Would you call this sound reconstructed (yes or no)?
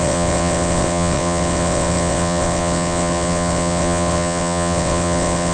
yes